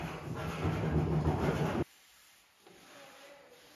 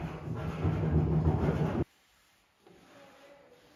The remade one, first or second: first